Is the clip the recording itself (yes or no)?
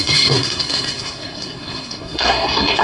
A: no